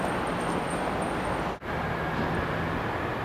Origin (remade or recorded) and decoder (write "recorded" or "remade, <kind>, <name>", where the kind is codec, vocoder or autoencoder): recorded